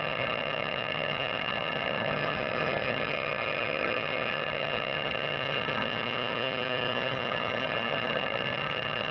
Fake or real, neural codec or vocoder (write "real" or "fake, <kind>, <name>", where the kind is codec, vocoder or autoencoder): fake, vocoder, HiFi-GAN